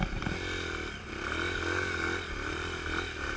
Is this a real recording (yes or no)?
yes